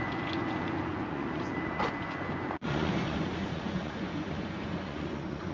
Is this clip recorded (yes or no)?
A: no